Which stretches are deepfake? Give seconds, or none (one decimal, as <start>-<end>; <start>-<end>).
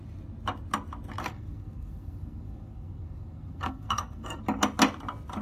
1.2-4.4